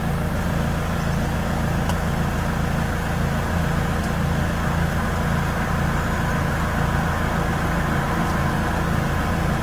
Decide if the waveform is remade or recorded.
recorded